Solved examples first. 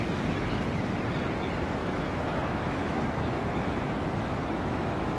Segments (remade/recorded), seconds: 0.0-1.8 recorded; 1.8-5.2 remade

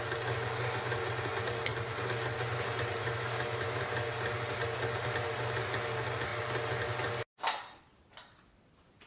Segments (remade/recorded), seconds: 0.0-3.0 recorded; 3.0-3.8 remade; 3.8-9.1 recorded

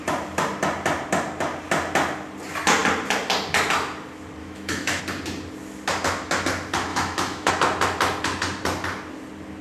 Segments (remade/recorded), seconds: 0.0-4.4 recorded; 4.4-5.0 remade; 5.0-6.9 recorded; 6.9-7.5 remade; 7.5-9.6 recorded

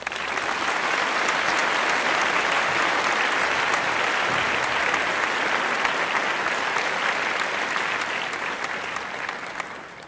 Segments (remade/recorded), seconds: 0.0-10.1 recorded

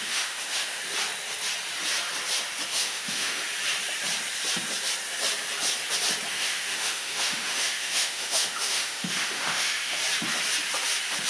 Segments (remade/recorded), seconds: 0.0-0.8 remade; 0.8-2.7 recorded; 2.7-3.4 remade; 3.4-6.3 recorded; 6.3-10.0 remade; 10.0-11.3 recorded

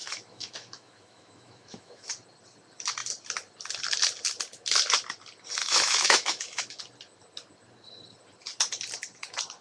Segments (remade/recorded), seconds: 0.0-2.1 remade; 2.1-5.6 recorded; 5.6-6.8 remade; 6.8-9.6 recorded

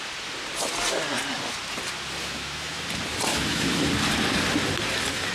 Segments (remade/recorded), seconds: 0.0-2.2 recorded; 2.2-2.8 remade; 2.8-3.3 recorded; 3.3-3.8 remade; 3.8-5.3 recorded